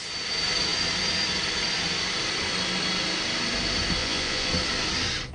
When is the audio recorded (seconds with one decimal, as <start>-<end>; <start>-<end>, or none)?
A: 0.0-4.0; 4.5-5.3